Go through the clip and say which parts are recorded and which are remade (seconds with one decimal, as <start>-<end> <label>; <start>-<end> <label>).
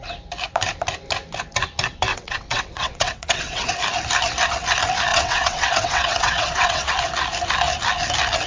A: 0.0-2.1 recorded; 2.1-3.7 remade; 3.7-5.1 recorded; 5.1-6.9 remade; 6.9-8.5 recorded